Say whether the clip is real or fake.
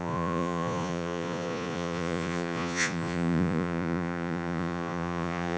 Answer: fake